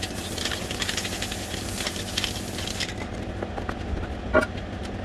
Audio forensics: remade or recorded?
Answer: recorded